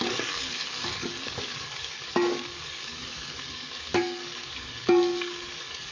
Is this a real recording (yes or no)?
no